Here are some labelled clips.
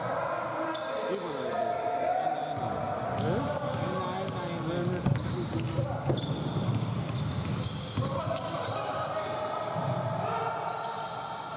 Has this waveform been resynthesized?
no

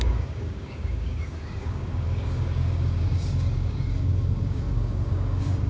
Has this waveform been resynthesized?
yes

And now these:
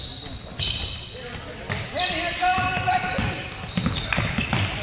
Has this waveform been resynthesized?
no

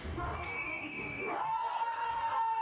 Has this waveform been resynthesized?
yes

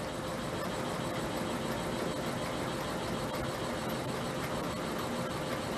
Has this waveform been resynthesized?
no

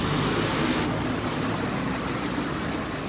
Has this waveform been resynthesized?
no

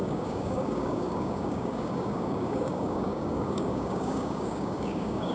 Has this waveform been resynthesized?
yes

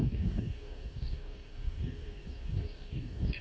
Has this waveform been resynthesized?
yes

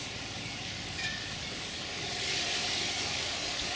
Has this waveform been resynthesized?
yes